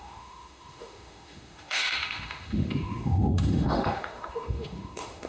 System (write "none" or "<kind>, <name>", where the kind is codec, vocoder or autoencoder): autoencoder, DAC-VAE